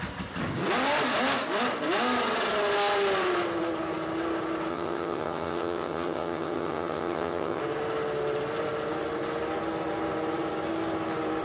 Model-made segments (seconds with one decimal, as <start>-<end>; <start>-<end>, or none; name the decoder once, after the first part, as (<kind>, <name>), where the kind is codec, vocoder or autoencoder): 4.7-7.6 (vocoder, HiFi-GAN)